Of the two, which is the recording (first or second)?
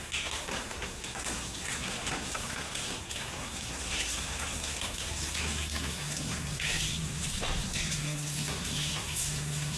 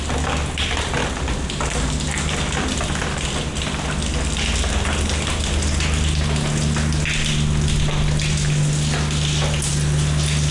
second